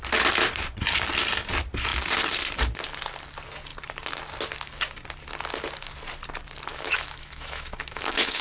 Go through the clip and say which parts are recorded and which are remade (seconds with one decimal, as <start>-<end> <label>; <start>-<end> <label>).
0.0-6.7 recorded; 6.7-8.4 remade